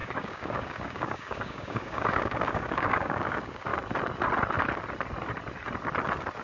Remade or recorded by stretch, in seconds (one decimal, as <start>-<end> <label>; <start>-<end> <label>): 0.0-3.7 remade; 3.7-6.4 recorded